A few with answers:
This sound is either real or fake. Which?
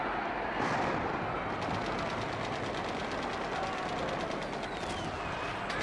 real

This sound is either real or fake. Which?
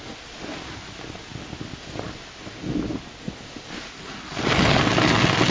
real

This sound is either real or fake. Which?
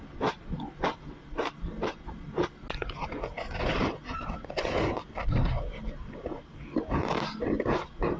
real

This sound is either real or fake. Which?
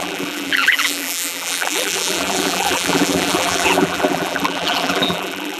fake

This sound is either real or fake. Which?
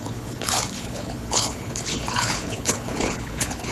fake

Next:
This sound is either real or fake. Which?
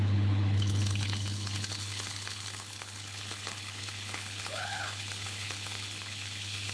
fake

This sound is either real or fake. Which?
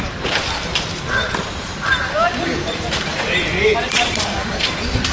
fake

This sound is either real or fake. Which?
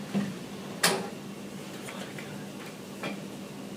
real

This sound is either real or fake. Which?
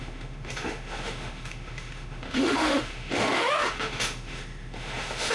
fake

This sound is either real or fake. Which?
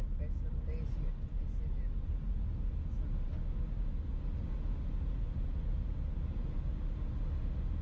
real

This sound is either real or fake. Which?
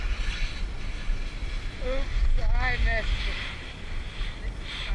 real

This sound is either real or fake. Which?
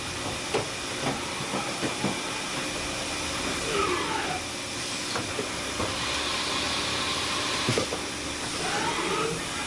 real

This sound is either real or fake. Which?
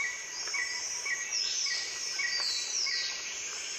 real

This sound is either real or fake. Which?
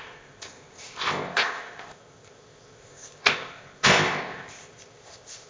fake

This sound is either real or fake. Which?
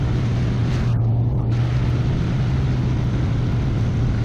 real